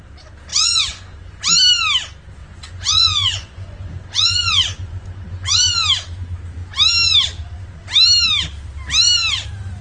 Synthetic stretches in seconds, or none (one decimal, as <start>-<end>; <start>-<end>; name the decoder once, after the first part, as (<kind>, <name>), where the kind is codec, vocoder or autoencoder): 0.5-1.4 (vocoder, Vocos); 2.4-5.7